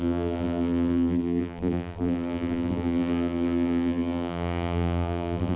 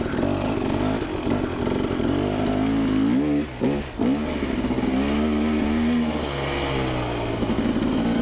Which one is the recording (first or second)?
second